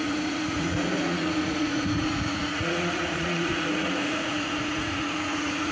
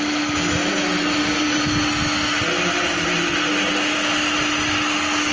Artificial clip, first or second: first